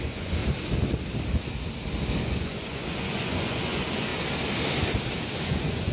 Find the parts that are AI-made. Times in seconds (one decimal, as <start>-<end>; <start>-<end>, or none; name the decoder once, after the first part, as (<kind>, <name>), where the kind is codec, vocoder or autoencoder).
0.0-0.4 (vocoder, Vocos); 2.2-4.1; 5.4-5.9